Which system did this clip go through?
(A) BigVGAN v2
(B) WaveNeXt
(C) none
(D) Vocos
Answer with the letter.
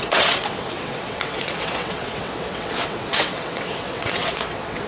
B